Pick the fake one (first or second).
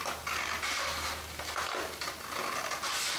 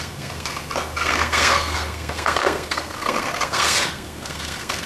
second